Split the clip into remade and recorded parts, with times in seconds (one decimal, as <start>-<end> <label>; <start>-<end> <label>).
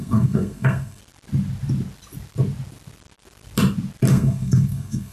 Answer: 0.0-1.0 remade; 1.0-4.1 recorded; 4.1-5.1 remade